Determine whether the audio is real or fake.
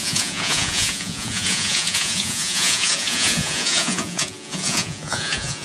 fake